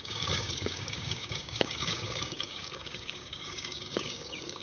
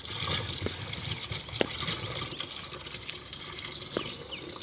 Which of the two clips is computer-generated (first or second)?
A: first